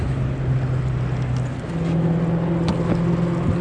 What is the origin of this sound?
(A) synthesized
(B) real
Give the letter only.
B